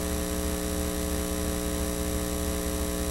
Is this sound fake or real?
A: real